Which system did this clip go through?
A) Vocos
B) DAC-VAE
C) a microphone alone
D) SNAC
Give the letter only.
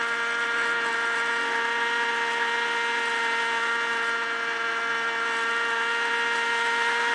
C